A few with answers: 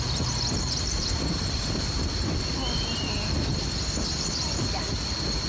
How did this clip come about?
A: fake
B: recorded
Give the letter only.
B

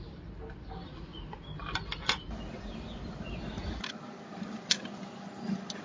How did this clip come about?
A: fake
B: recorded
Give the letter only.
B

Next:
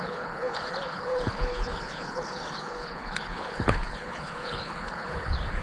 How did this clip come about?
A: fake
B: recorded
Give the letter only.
A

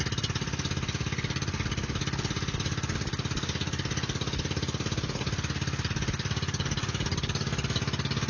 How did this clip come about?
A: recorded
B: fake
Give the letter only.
A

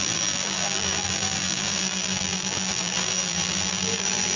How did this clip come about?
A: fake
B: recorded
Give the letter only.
A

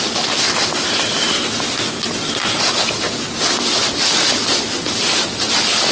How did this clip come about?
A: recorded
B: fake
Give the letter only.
A